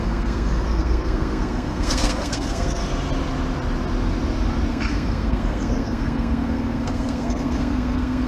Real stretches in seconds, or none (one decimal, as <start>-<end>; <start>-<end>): 2.8-4.7